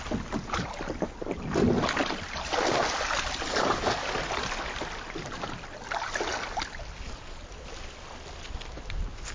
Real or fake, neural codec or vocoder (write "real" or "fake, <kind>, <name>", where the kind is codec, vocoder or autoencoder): real